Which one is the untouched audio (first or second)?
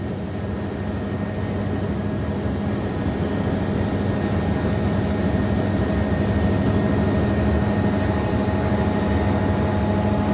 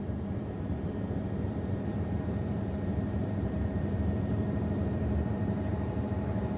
first